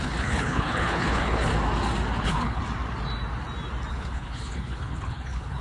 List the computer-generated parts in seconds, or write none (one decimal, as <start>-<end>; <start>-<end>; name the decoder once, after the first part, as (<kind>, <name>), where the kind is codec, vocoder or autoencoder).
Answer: 0.0-1.5 (codec, HILCodec); 2.2-2.6; 3.9-5.6